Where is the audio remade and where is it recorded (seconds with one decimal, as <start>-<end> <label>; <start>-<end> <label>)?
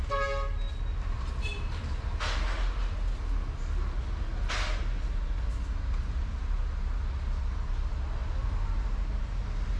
0.0-9.8 recorded